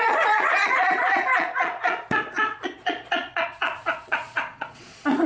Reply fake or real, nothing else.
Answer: fake